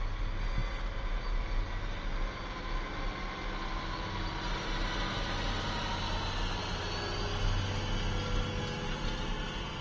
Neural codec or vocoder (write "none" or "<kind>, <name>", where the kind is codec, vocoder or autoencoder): none